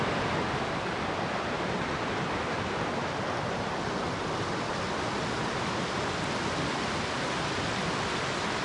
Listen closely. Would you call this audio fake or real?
real